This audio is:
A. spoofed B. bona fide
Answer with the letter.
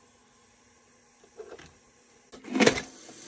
B